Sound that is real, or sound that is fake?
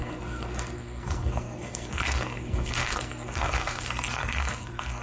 fake